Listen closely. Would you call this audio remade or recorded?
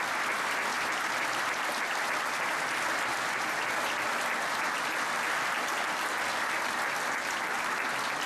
recorded